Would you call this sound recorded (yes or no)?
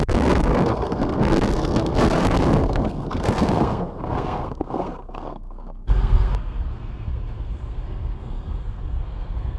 no